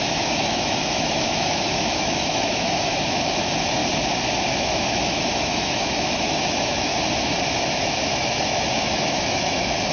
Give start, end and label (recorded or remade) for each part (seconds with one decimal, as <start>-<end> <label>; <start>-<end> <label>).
0.0-3.8 remade; 3.8-4.5 recorded; 4.5-6.9 remade; 6.9-7.7 recorded; 7.7-9.9 remade